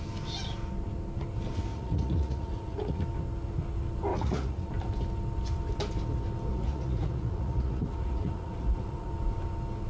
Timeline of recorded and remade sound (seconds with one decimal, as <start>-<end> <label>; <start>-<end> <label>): 0.0-1.7 recorded; 1.7-3.0 remade; 3.0-4.1 recorded; 4.1-4.7 remade; 4.7-6.5 recorded; 6.5-9.1 remade; 9.1-9.9 recorded